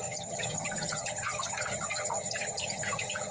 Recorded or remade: remade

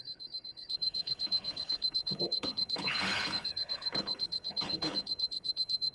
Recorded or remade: remade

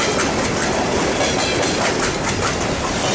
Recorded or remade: recorded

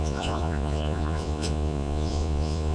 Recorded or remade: remade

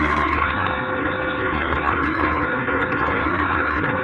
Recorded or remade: remade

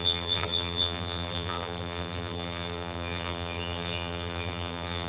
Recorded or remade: remade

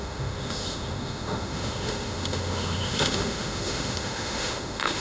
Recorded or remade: remade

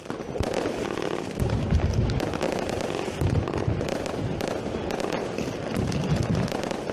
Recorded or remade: recorded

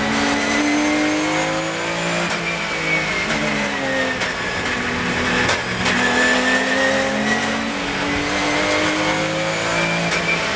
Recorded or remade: recorded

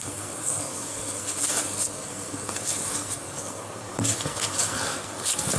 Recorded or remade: remade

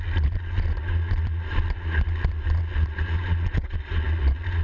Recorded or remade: remade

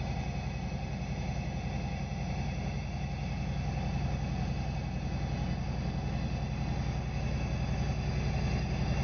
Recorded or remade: recorded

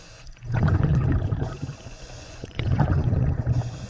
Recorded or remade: remade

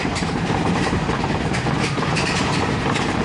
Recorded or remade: remade